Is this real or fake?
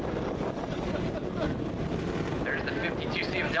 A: real